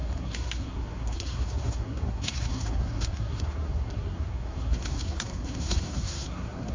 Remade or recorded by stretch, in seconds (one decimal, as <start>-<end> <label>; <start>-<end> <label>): 0.0-6.7 remade